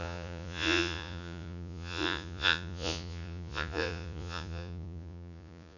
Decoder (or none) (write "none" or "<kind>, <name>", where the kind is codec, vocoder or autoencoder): vocoder, Vocos